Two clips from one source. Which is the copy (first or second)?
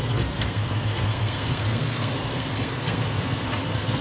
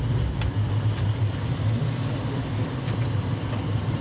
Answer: first